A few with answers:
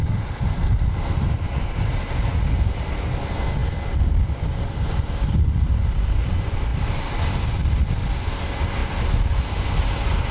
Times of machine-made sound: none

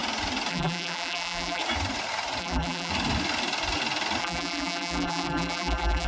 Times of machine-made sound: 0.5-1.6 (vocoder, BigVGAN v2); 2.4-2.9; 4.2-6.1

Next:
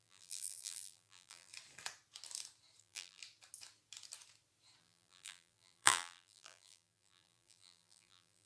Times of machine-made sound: 0.0-1.5 (vocoder, BigVGAN v2); 2.8-3.2; 4.8-8.5

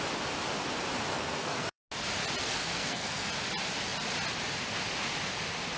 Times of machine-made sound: 1.1-1.8 (codec, SNAC); 2.4-3.3

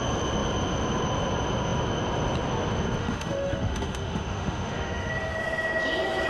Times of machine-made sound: 3.0-5.1 (autoencoder, DAC-VAE)